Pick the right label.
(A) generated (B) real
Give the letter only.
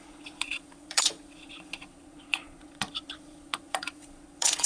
A